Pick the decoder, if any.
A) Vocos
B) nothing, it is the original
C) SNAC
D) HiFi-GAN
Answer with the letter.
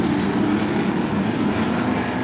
B